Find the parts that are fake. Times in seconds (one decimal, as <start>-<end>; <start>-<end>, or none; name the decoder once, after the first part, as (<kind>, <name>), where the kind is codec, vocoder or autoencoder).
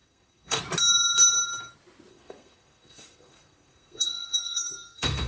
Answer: 0.0-0.6 (codec, SNAC); 2.1-5.3